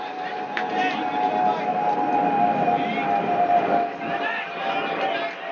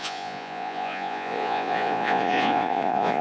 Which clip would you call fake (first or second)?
second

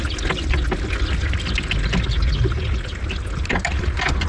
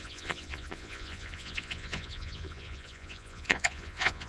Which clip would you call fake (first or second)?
second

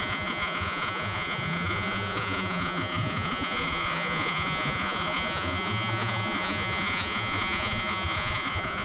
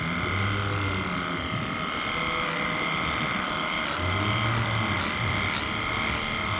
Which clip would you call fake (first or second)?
first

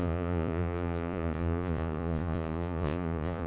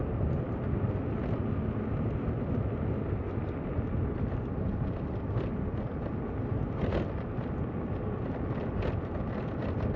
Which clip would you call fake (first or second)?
first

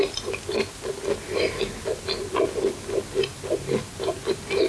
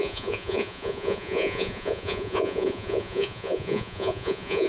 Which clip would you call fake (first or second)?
second